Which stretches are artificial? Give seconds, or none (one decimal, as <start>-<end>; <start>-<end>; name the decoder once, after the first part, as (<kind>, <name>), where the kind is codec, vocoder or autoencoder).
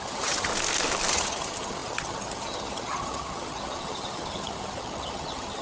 0.0-0.5 (vocoder, HiFi-GAN); 1.1-5.6